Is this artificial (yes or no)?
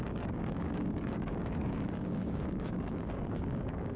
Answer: yes